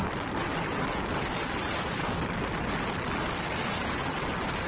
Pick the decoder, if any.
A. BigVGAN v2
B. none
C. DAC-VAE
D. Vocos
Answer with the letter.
B